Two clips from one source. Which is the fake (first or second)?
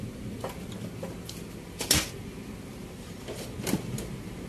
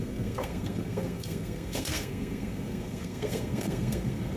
second